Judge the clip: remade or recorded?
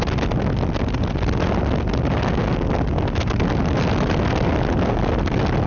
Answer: recorded